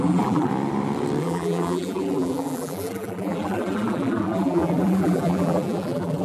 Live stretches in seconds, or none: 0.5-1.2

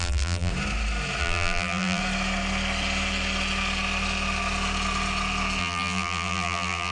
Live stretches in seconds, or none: 0.5-1.2; 2.0-5.6